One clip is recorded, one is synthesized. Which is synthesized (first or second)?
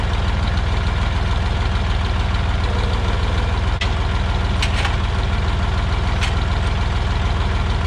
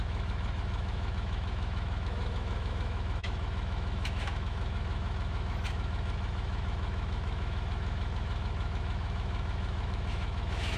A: second